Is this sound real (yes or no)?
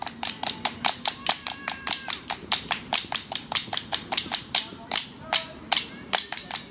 no